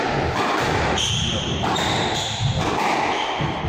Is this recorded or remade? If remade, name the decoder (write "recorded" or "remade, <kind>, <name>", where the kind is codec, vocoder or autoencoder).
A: recorded